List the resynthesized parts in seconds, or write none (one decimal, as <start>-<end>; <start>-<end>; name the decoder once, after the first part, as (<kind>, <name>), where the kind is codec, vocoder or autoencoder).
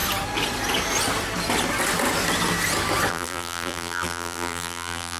3.1-5.2 (vocoder, BigVGAN v2)